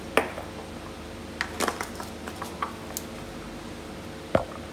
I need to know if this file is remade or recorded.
recorded